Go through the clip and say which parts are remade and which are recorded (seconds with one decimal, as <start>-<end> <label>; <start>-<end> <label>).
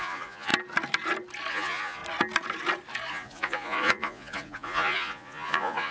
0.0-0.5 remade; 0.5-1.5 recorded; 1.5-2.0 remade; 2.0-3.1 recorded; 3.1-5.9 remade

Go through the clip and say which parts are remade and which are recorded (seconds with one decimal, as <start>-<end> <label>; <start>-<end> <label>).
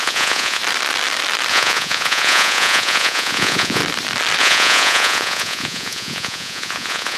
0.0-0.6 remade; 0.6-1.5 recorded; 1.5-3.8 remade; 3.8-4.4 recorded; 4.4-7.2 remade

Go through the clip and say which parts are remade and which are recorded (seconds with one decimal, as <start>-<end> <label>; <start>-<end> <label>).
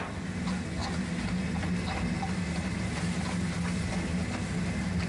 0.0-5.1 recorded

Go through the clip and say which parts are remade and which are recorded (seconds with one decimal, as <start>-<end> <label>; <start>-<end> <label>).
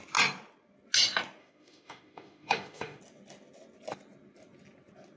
0.0-1.4 recorded; 1.4-3.0 remade; 3.0-5.2 recorded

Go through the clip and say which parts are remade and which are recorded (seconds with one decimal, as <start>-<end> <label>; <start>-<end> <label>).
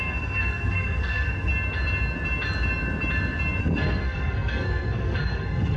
0.0-1.5 remade; 1.5-3.6 recorded; 3.6-5.8 remade